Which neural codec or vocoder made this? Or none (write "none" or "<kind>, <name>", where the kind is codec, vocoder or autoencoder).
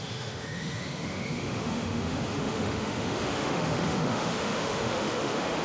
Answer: autoencoder, DAC-VAE